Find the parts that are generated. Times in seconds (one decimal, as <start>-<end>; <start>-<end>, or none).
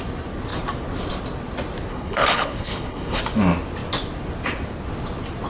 1.9-3.2